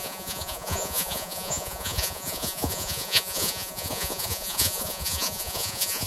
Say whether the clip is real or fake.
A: fake